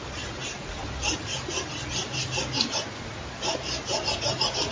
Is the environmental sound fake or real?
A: real